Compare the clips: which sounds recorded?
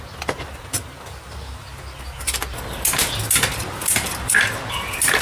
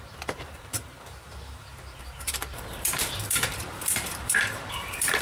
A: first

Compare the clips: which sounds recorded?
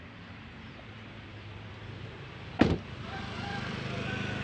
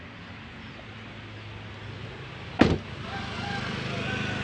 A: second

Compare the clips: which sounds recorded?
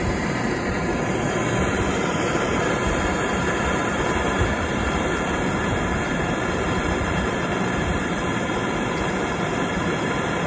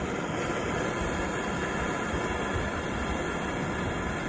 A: second